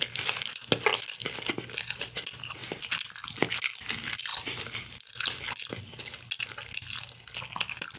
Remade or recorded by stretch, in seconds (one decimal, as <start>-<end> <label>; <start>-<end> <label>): 0.0-8.0 recorded